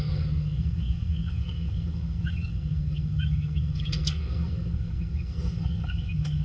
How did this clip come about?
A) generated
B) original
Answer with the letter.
A